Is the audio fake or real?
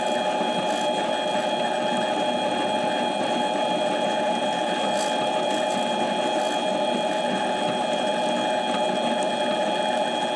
real